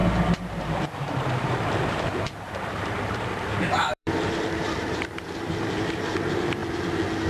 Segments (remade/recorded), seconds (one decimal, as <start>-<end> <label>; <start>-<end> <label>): 0.0-6.6 remade; 6.6-7.3 recorded